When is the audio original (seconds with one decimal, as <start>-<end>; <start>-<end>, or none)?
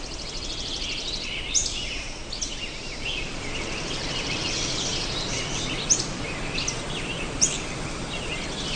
0.0-8.8